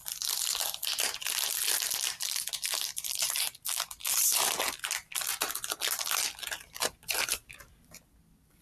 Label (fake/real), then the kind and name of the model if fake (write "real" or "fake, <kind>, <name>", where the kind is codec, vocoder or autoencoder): real